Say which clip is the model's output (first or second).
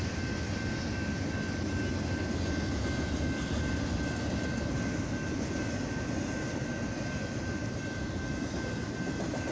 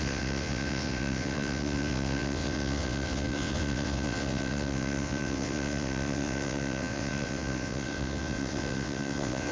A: second